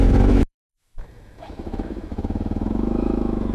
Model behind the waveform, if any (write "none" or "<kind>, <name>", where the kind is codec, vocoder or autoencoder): autoencoder, DAC-VAE